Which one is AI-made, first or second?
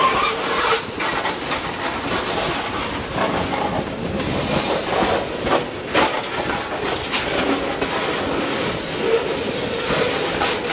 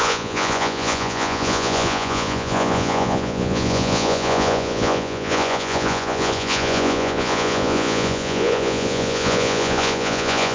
second